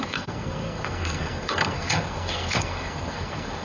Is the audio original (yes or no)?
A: no